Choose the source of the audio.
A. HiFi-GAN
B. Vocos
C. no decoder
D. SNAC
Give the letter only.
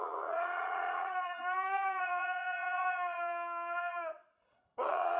B